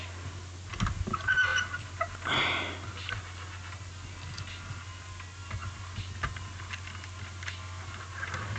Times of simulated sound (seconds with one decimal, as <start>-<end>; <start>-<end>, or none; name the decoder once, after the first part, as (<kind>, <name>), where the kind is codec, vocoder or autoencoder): none